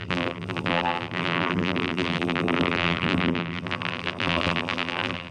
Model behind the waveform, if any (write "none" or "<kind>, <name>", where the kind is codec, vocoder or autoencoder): vocoder, BigVGAN v2